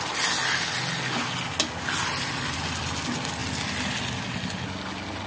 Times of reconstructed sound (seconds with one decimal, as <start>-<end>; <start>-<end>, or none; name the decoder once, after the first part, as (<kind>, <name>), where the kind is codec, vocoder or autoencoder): none